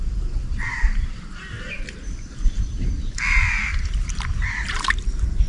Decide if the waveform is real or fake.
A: fake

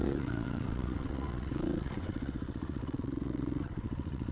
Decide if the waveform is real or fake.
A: fake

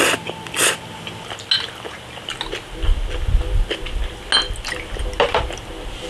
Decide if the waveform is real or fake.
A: real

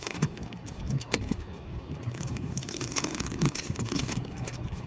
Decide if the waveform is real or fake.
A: fake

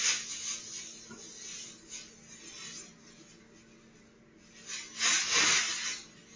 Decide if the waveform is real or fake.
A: real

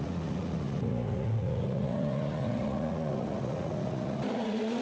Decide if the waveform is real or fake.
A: fake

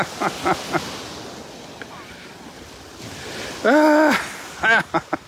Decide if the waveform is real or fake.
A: real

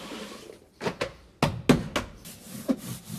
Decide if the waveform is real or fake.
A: real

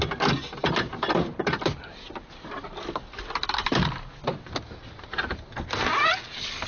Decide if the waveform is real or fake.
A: real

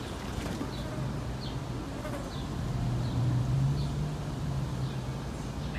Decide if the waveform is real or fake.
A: real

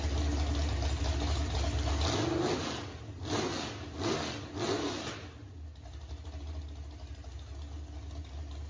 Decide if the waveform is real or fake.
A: real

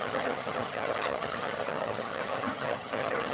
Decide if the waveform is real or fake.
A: fake